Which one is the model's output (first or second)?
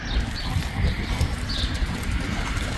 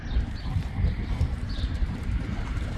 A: second